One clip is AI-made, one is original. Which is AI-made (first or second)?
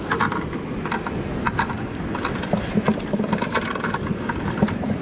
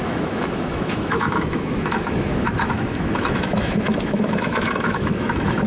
second